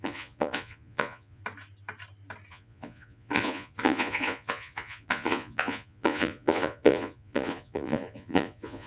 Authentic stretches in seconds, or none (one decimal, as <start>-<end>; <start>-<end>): 1.4-2.5